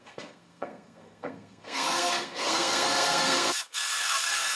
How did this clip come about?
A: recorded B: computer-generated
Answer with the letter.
B